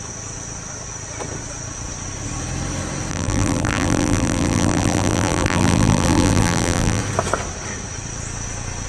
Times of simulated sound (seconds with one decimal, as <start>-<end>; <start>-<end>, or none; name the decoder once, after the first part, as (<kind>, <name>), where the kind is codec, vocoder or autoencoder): 3.1-7.0 (vocoder, BigVGAN v2)